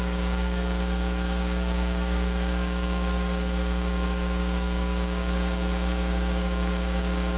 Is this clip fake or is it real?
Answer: fake